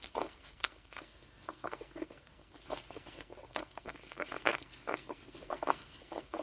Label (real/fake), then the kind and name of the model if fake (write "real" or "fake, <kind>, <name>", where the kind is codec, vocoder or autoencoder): fake, codec, SNAC